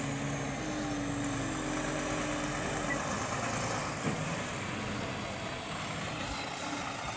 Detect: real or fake real